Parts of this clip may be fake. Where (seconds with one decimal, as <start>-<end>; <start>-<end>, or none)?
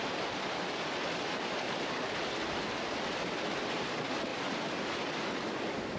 none